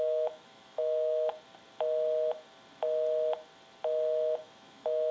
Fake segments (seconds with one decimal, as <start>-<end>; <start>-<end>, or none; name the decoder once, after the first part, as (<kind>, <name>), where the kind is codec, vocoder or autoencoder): 0.0-1.3 (autoencoder, DAC-VAE); 4.4-5.1